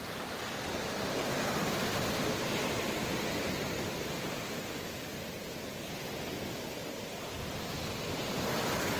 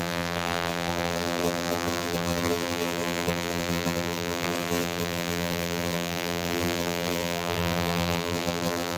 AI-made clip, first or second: second